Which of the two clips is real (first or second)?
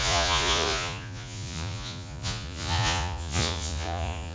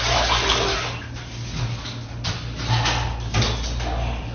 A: second